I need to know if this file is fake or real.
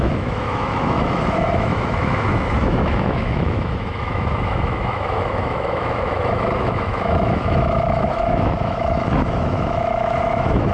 fake